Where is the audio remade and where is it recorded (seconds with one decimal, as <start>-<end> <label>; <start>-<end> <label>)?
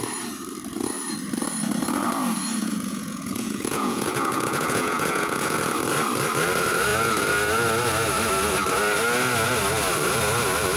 0.0-2.6 recorded; 2.6-5.6 remade; 5.6-10.8 recorded